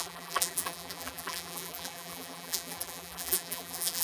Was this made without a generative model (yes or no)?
no